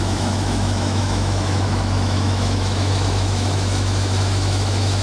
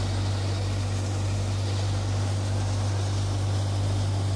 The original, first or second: second